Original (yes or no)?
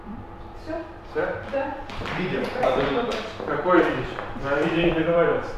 no